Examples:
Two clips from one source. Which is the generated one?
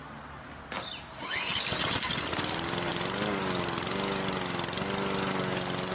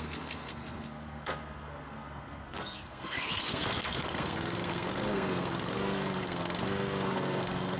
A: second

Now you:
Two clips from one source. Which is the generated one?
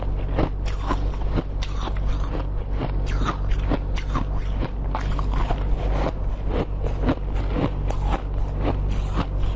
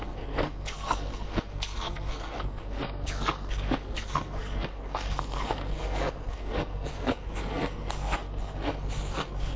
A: second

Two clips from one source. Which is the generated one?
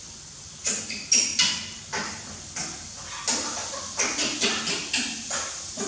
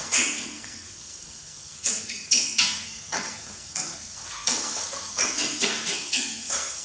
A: second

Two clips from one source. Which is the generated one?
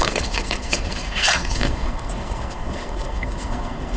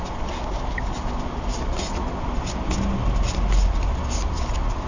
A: first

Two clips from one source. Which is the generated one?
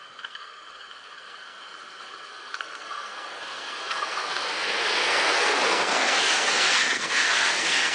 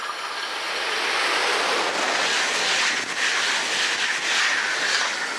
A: first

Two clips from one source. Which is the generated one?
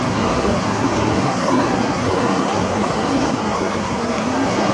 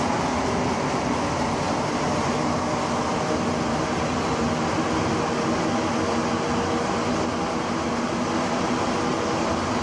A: first